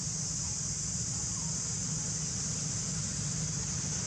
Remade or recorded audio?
recorded